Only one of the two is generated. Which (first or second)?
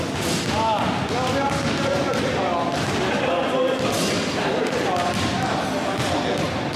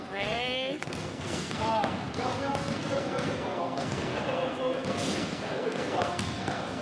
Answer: second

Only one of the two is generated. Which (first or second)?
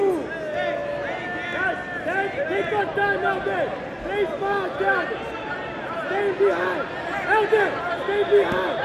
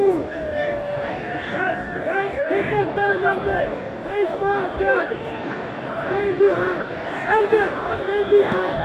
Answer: second